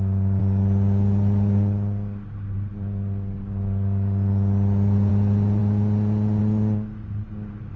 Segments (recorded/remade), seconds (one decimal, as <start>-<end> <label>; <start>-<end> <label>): 0.0-7.8 recorded